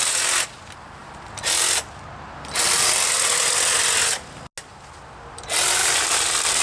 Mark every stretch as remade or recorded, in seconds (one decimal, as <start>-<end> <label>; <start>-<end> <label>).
0.0-5.8 recorded; 5.8-6.6 remade